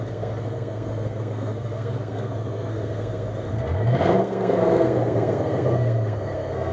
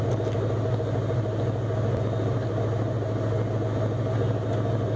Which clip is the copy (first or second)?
first